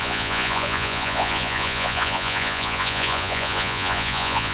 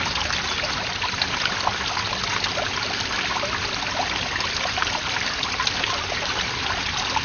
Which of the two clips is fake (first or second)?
first